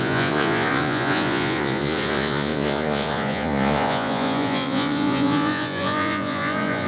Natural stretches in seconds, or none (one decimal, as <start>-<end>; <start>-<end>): none